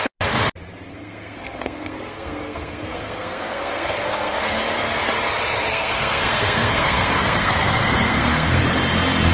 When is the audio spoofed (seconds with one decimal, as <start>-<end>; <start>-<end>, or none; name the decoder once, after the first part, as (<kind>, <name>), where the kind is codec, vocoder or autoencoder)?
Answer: 0.9-4.6 (codec, SNAC); 5.7-8.6